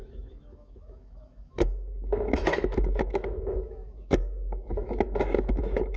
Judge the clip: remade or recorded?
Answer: remade